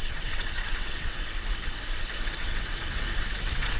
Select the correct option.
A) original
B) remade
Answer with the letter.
B